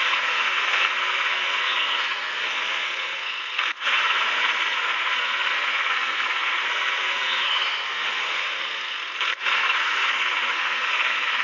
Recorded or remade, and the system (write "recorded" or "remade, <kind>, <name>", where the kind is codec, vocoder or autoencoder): remade, codec, SNAC